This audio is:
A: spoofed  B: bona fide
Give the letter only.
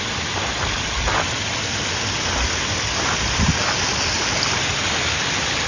B